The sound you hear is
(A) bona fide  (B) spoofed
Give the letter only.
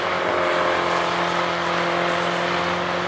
A